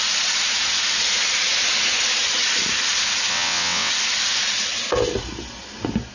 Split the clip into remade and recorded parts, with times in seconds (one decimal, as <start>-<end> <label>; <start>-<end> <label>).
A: 0.0-3.3 recorded; 3.3-3.9 remade; 3.9-6.1 recorded